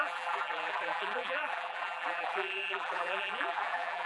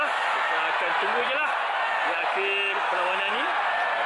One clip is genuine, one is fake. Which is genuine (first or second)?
second